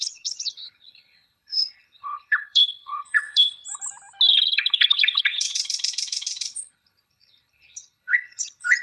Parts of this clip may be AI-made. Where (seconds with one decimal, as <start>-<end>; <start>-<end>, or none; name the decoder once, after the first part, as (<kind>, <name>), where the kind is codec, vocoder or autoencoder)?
0.0-3.6 (codec, HILCodec); 4.3-8.8